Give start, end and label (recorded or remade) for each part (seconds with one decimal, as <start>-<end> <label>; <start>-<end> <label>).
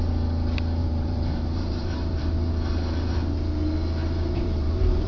0.0-0.8 recorded; 0.8-2.5 remade; 2.5-4.0 recorded; 4.0-5.1 remade